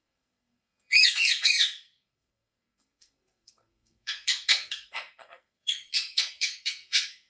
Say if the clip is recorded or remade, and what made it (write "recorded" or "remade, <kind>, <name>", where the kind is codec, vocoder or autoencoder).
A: remade, codec, SNAC